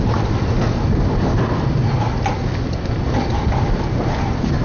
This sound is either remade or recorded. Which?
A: recorded